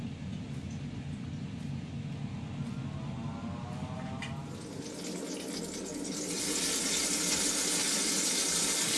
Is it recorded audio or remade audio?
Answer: recorded